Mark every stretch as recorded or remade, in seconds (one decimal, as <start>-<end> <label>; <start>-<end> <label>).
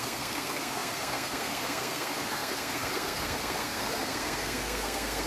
0.0-5.3 remade